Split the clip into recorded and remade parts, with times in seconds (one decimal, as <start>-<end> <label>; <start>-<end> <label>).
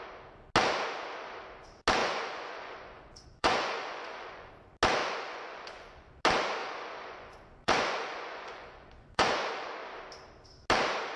0.0-2.0 recorded; 2.0-4.5 remade; 4.5-5.0 recorded; 5.0-6.1 remade; 6.1-6.6 recorded; 6.6-9.7 remade; 9.7-11.2 recorded